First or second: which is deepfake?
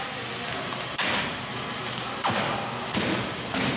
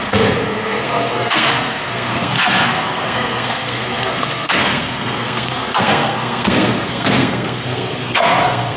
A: second